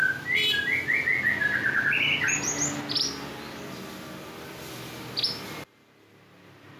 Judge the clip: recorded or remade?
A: recorded